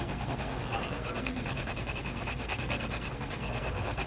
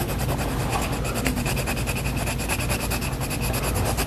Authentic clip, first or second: second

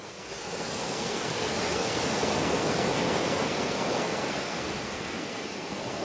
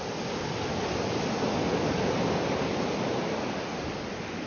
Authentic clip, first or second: second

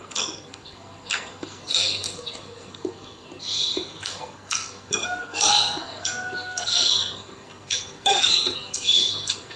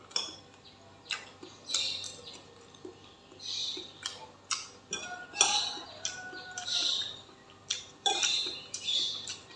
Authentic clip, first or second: second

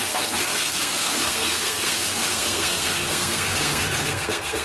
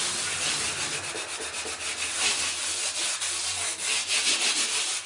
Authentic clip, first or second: second